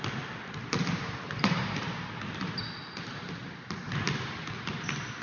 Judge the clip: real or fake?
real